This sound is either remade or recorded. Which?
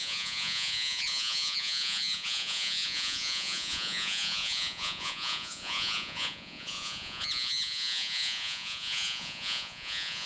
remade